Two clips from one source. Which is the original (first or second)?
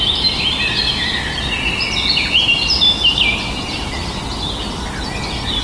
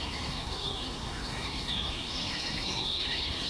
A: first